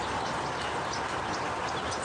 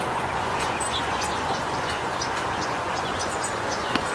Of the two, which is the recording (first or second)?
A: first